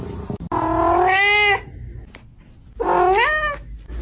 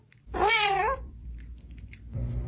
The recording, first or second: first